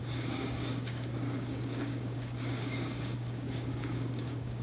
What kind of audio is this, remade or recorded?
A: remade